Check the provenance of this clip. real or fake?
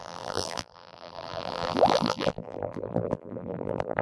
fake